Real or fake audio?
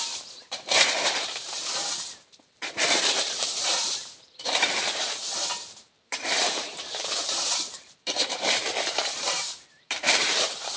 fake